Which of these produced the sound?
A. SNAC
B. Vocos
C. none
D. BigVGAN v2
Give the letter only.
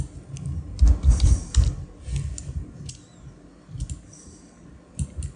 C